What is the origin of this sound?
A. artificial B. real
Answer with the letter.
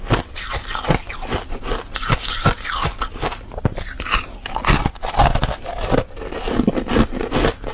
B